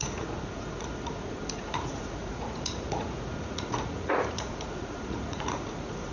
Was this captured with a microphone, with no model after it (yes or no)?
no